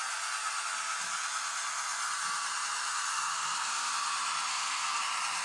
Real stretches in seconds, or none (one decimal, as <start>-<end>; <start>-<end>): 0.0-3.1; 3.9-4.5; 5.0-5.4

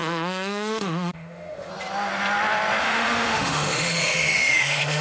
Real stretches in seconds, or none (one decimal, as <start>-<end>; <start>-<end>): 1.7-2.8

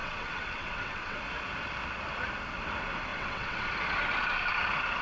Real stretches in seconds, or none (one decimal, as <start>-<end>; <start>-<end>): 1.2-3.1; 3.7-5.0

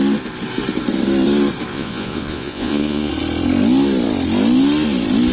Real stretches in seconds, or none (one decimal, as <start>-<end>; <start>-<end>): 0.0-1.7; 3.1-5.3